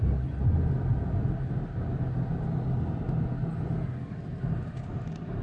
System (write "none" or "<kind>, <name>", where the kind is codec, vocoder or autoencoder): none